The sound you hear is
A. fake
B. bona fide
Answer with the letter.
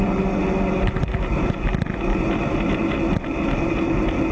B